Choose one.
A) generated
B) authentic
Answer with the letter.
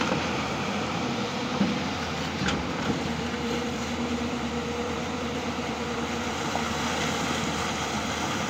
A